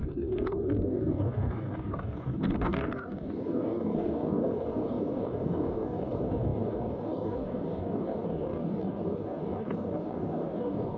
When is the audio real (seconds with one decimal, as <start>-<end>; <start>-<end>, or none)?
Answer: none